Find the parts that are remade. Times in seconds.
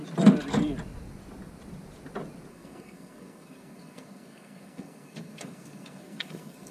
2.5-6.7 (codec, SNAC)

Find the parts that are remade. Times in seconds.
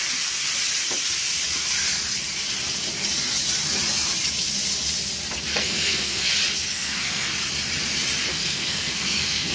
5.5-6.3 (codec, SNAC); 6.7-7.3; 8.3-9.5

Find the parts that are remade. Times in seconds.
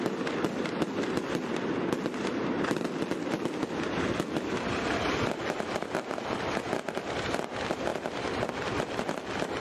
none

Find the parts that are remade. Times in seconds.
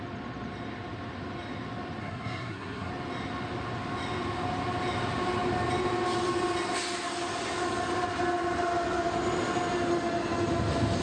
2.0-2.9 (codec, SNAC)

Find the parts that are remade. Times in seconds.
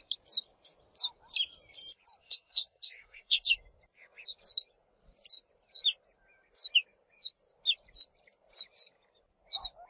2.2-3.5 (codec, SNAC)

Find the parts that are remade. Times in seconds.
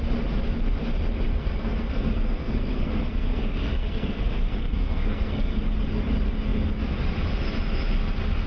1.3-5.6 (codec, SNAC)